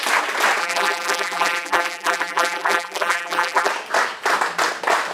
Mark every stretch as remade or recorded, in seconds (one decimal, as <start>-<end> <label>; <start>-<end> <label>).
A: 0.0-0.6 recorded; 0.6-3.7 remade; 3.7-5.1 recorded